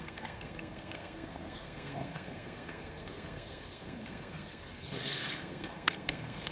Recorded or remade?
remade